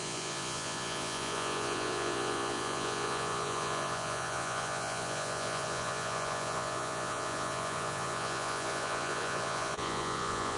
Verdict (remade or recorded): remade